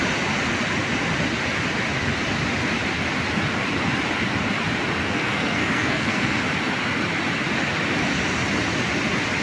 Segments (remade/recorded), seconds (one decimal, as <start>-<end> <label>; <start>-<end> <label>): 0.0-5.0 recorded; 5.0-6.4 remade; 6.4-9.4 recorded